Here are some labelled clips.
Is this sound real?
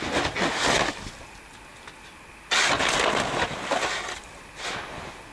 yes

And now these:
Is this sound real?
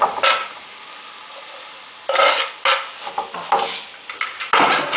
yes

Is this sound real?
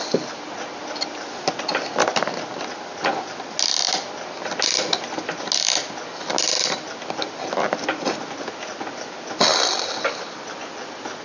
yes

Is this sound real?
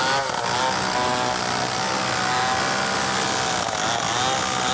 yes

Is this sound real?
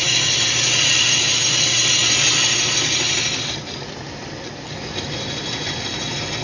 yes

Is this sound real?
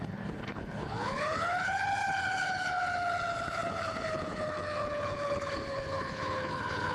no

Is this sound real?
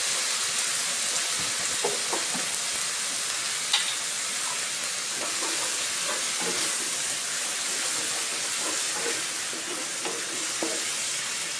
yes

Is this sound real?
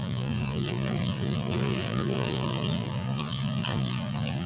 no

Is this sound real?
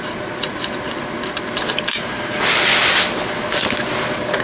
yes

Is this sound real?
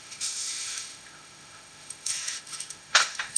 no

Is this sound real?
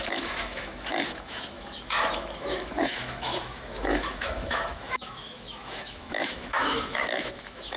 no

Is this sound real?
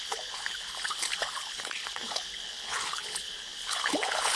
no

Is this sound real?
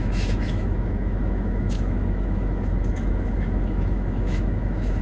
no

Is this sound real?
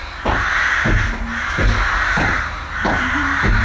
yes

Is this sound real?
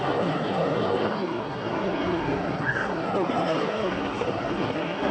no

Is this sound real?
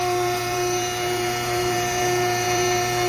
no